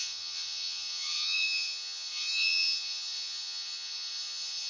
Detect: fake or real fake